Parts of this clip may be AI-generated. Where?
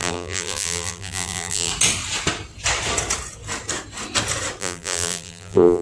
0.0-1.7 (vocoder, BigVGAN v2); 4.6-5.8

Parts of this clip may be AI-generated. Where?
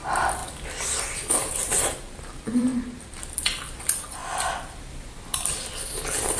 0.0-0.4 (vocoder, BigVGAN v2); 1.0-2.7; 3.2-6.4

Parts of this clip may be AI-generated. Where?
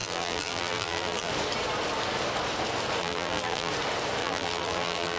0.0-1.3 (vocoder, BigVGAN v2); 3.0-3.7; 4.2-5.2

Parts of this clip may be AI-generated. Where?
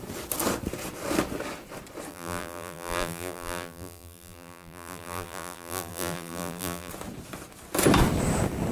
2.1-6.9 (vocoder, BigVGAN v2)